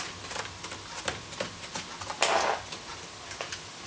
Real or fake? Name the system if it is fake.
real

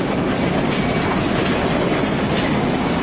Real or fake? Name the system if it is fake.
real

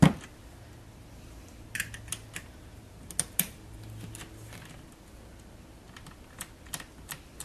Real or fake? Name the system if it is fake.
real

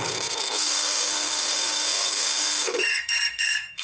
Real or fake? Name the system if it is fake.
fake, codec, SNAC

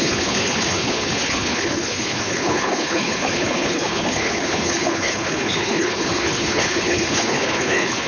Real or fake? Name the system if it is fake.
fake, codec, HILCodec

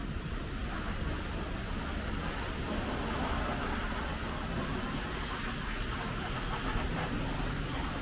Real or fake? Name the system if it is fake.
real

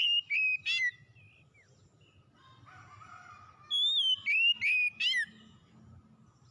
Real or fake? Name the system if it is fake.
real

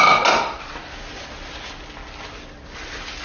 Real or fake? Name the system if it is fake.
real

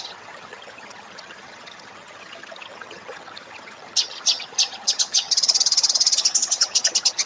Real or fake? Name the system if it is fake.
fake, vocoder, HiFi-GAN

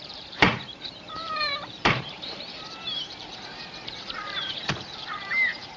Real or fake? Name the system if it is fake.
fake, vocoder, BigVGAN v2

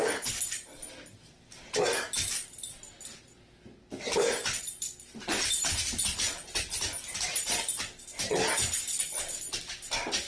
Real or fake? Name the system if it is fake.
real